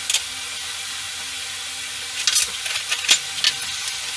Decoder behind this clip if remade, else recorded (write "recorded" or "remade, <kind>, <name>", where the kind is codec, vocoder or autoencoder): recorded